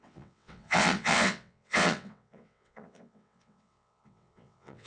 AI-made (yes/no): yes